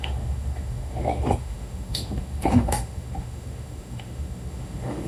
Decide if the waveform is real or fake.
fake